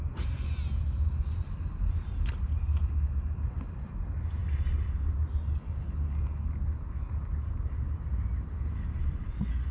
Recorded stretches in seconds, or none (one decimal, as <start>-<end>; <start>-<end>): 0.0-9.7